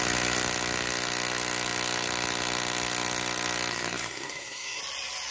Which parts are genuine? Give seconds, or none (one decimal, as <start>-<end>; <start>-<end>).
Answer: 0.0-3.7; 4.8-5.3